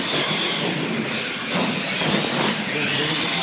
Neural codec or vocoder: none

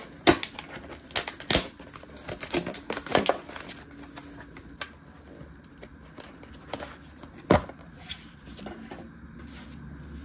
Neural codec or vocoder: none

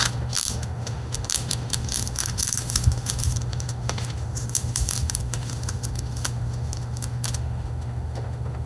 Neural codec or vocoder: autoencoder, DAC-VAE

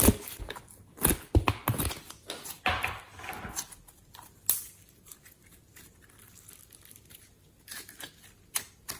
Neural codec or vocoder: none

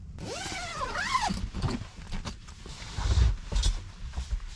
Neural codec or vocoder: none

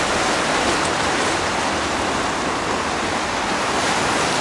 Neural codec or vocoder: none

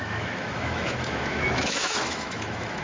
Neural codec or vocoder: autoencoder, DAC-VAE